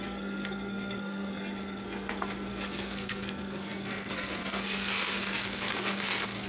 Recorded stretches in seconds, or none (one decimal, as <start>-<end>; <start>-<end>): none